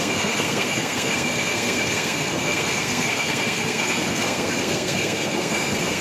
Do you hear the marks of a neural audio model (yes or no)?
yes